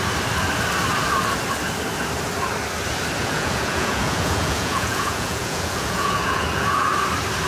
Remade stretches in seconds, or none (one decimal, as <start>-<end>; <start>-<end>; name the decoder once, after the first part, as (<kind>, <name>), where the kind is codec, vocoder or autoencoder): 3.2-6.9 (vocoder, Vocos)